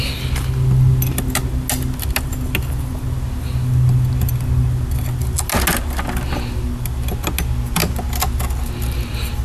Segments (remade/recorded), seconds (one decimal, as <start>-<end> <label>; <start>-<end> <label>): 0.0-9.4 recorded